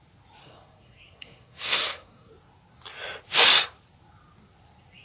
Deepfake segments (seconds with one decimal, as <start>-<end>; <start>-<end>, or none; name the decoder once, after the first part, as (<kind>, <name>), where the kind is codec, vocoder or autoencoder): 0.4-2.3 (codec, SNAC)